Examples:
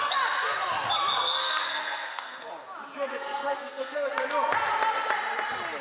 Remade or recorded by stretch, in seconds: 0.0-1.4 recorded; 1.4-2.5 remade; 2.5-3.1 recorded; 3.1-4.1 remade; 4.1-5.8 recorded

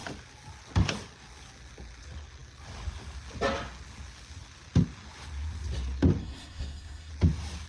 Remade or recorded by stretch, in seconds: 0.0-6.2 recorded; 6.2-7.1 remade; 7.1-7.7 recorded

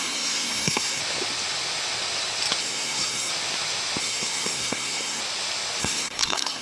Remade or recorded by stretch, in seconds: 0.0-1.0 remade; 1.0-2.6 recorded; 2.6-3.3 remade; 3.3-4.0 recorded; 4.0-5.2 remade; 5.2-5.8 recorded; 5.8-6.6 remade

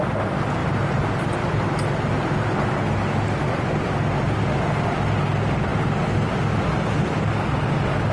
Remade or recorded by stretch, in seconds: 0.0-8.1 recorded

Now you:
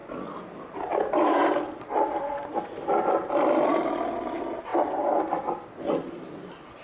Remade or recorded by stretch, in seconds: 0.0-6.8 recorded

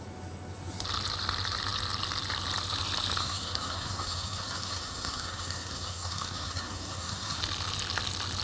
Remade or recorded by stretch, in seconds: 0.0-3.2 recorded; 3.2-7.4 remade; 7.4-8.4 recorded